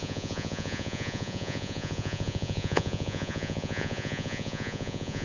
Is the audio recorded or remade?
remade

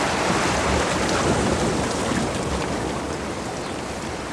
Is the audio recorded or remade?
recorded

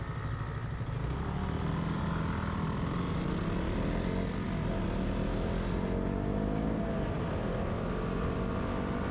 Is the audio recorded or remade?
recorded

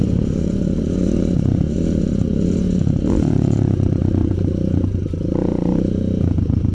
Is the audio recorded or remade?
remade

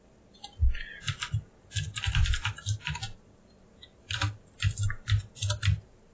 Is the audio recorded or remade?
recorded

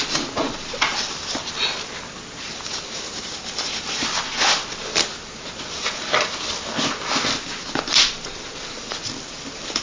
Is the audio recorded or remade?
recorded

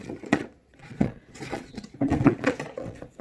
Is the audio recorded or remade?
remade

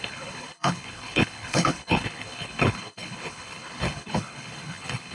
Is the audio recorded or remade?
remade